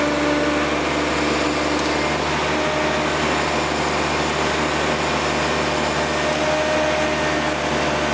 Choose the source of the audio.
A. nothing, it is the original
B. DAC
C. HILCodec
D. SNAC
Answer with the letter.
A